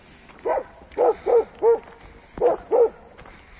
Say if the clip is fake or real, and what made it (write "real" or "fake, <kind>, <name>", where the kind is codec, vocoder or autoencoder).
real